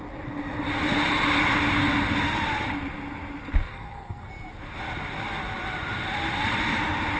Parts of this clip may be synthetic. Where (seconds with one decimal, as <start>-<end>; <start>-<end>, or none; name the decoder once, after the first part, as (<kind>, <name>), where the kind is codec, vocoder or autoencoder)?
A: 3.7-4.3 (codec, SNAC)